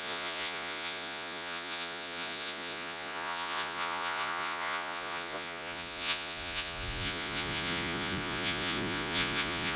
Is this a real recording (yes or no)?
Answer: no